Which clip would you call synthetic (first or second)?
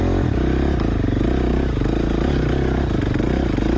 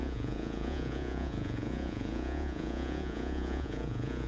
second